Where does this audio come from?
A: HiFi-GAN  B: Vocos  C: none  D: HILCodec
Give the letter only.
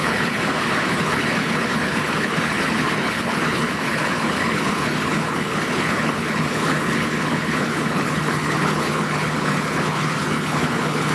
D